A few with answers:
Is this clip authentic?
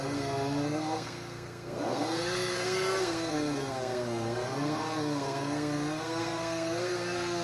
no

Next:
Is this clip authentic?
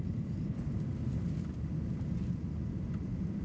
no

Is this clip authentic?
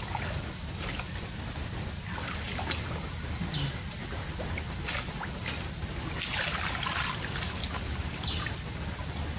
yes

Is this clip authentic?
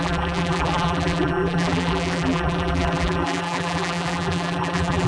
no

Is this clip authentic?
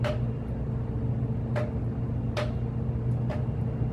yes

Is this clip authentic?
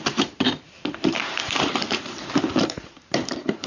no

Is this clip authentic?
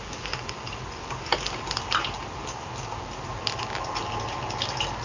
yes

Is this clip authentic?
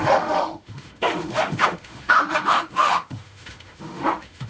no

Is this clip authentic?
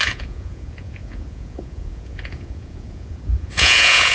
no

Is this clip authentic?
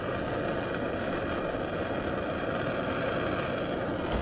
yes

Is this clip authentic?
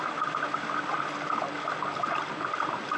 yes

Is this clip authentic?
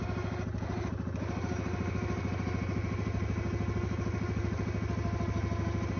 yes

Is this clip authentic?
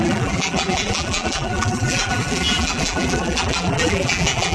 no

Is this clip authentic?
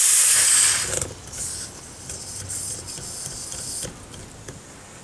yes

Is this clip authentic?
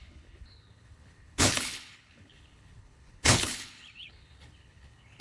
no